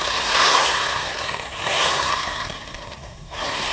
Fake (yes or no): yes